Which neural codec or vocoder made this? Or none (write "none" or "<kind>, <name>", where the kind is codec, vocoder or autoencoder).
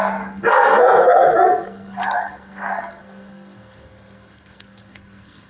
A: codec, SNAC